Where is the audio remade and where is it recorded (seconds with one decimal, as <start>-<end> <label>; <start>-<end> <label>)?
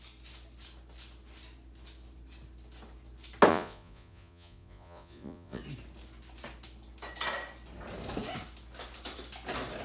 0.0-3.5 recorded; 3.5-5.6 remade; 5.6-9.8 recorded